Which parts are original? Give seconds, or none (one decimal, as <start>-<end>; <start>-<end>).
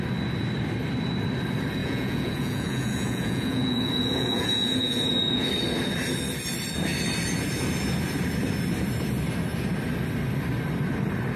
0.0-1.8; 5.5-11.4